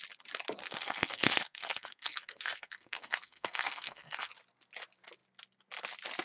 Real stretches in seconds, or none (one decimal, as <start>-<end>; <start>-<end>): 0.0-0.6; 4.3-6.2